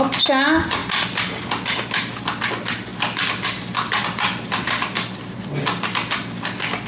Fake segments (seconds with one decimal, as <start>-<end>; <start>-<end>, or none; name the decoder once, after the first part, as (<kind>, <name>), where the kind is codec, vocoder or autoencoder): none